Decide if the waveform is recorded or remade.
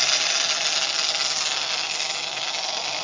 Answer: recorded